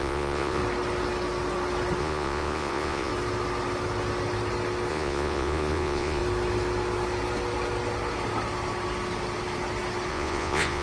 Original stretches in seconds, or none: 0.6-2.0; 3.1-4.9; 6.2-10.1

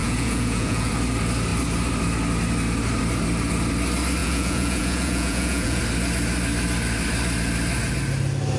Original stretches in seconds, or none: 0.9-4.2; 5.8-8.6

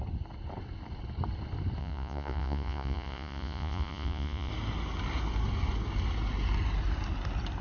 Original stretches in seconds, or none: 0.0-1.8; 4.5-7.6

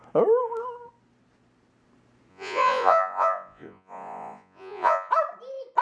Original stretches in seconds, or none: 0.0-2.3; 5.1-5.8

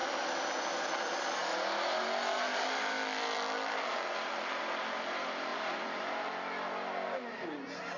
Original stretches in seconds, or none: 0.0-5.5; 6.0-8.0

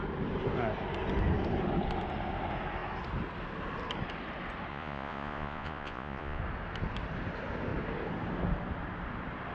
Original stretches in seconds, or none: 0.0-4.7; 6.4-9.5

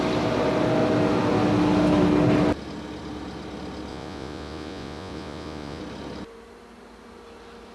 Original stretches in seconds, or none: 0.0-3.9; 5.8-7.7